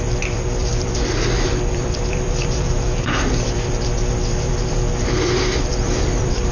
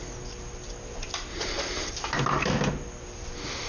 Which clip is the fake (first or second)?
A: first